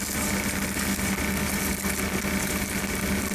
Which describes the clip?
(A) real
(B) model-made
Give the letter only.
A